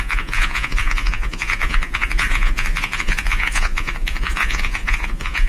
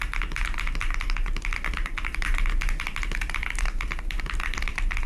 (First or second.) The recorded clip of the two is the second